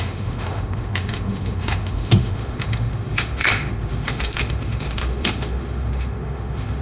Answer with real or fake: fake